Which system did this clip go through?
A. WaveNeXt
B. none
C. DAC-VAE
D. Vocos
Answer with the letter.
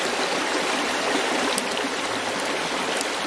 B